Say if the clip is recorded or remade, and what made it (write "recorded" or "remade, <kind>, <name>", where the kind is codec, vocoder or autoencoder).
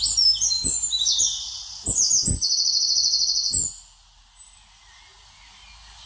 recorded